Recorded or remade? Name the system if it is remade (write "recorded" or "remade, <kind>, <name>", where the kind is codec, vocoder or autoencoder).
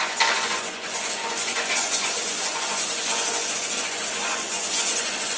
remade, vocoder, Vocos